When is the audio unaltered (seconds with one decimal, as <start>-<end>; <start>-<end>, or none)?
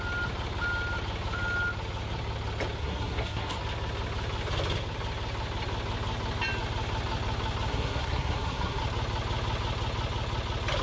0.0-2.8; 3.6-7.7; 8.8-10.8